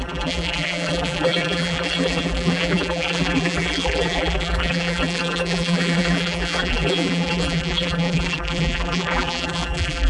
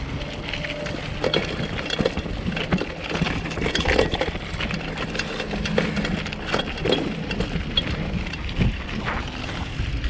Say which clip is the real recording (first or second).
second